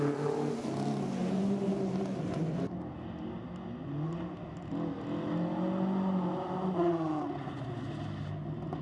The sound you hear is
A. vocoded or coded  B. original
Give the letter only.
B